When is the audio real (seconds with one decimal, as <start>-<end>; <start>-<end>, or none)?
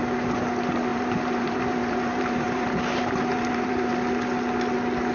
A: 0.0-0.9; 3.9-5.1